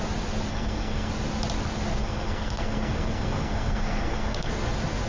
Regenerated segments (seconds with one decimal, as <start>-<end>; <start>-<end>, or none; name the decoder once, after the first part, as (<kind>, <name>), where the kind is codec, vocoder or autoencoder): 0.5-1.1 (codec, SNAC); 2.0-4.5